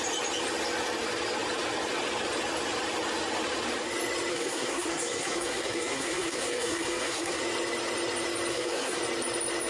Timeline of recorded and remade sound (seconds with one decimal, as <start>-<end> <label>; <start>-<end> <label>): 0.0-4.3 recorded; 4.3-7.4 remade; 7.4-8.5 recorded; 8.5-9.0 remade; 9.0-9.7 recorded

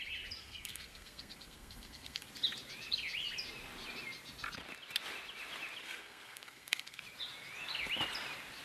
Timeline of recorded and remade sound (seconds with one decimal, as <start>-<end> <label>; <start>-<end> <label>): 0.0-0.4 recorded; 0.4-2.3 remade; 2.3-5.8 recorded; 5.8-7.0 remade; 7.0-8.6 recorded

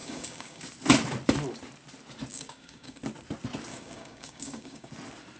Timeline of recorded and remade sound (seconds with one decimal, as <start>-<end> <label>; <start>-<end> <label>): 0.0-0.6 remade; 0.6-2.3 recorded; 2.3-3.0 remade; 3.0-3.7 recorded; 3.7-4.9 remade; 4.9-5.4 recorded

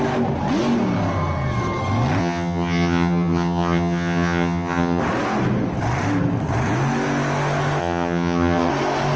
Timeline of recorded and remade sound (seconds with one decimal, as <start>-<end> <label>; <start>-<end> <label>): 0.0-2.2 recorded; 2.2-5.0 remade; 5.0-7.8 recorded; 7.8-8.7 remade; 8.7-9.2 recorded

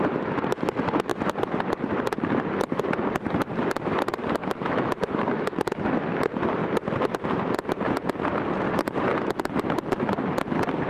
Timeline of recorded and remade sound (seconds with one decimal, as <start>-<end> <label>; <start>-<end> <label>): 0.0-4.4 recorded; 4.4-5.8 remade; 5.8-10.9 recorded

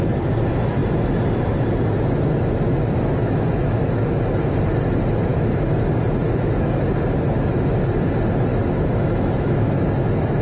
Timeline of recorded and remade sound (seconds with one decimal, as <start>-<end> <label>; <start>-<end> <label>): 0.0-3.2 recorded; 3.2-4.2 remade; 4.2-8.5 recorded; 8.5-9.6 remade; 9.6-10.4 recorded

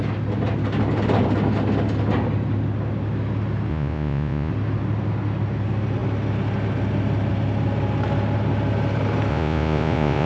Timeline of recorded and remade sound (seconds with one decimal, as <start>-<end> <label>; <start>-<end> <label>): 0.0-3.7 recorded; 3.7-4.5 remade; 4.5-9.3 recorded; 9.3-10.3 remade

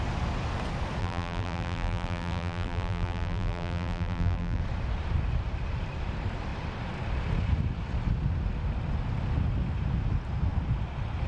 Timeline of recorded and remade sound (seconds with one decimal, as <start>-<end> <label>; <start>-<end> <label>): 0.0-1.0 recorded; 1.0-4.6 remade; 4.6-11.3 recorded